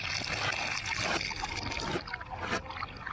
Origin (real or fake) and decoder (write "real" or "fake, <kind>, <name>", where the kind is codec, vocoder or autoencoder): real